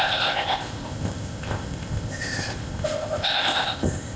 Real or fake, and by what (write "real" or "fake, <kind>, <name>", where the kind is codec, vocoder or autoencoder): fake, codec, ZipCodec